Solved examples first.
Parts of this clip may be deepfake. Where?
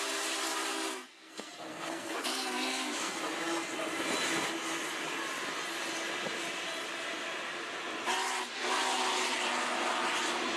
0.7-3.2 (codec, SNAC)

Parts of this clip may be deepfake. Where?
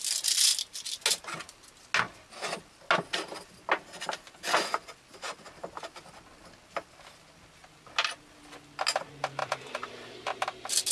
9.4-9.9 (vocoder, BigVGAN v2)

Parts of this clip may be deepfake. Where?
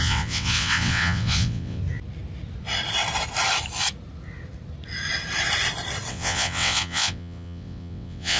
0.0-1.8 (vocoder, WaveNeXt); 6.1-8.4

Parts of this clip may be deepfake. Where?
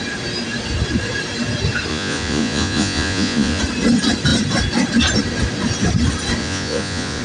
1.9-3.6 (vocoder, Vocos); 6.4-7.2